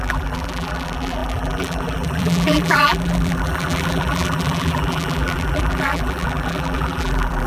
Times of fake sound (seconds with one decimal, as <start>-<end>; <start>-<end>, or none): 0.0-7.5

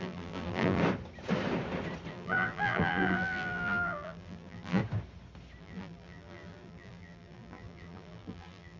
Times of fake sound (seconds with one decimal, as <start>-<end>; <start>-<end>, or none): 0.0-0.8; 2.1-4.8; 5.6-8.8

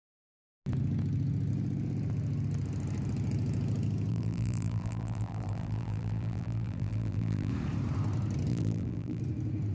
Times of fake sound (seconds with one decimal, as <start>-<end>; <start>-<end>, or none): 4.1-7.5; 8.5-9.2

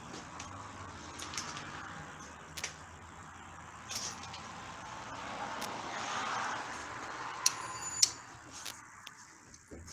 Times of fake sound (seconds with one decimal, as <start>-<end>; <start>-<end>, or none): 3.2-4.6; 6.8-7.4